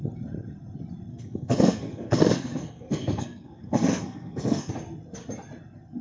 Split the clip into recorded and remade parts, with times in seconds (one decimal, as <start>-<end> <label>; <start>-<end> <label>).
0.0-1.1 recorded; 1.1-4.7 remade; 4.7-6.0 recorded